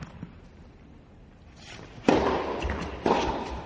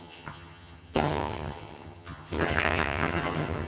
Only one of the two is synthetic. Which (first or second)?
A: second